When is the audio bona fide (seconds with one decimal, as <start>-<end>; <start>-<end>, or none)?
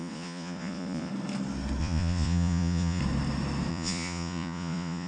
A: 1.1-1.8; 3.0-3.7